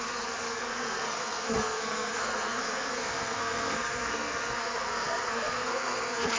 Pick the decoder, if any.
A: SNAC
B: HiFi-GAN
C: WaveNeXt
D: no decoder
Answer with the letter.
A